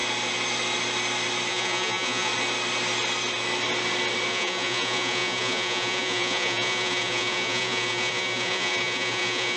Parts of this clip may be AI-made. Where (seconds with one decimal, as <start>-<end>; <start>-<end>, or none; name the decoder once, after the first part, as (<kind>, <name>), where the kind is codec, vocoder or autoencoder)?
1.5-2.3 (vocoder, Vocos); 4.3-9.6